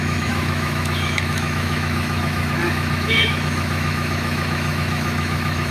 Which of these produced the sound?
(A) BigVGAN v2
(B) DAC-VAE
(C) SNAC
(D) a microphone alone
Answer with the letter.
B